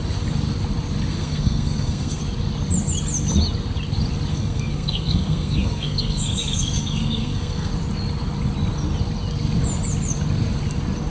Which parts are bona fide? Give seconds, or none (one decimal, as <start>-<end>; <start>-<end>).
0.0-1.1; 2.2-4.3; 7.7-11.1